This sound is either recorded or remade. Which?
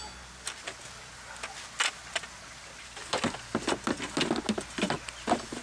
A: recorded